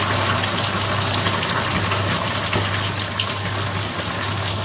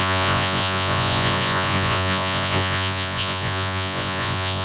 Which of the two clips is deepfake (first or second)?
second